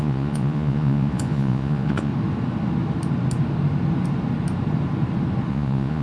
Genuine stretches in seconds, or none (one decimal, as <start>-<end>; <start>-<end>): 2.1-5.5

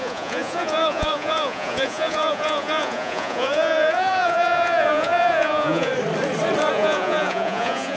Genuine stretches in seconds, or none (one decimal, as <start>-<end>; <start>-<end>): 5.9-6.7

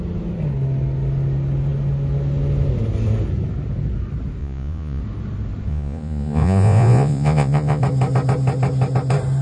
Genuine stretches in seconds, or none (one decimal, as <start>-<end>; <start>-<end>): 0.0-4.4; 5.0-5.7; 7.8-9.4

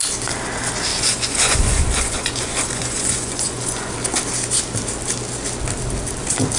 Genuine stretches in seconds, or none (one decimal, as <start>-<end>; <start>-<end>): 0.0-0.9; 3.9-6.6

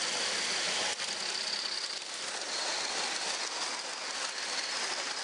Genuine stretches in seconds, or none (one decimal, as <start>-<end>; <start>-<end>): 0.0-5.2

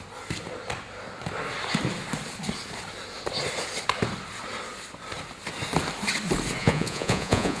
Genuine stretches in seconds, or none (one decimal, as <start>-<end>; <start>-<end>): 0.0-6.6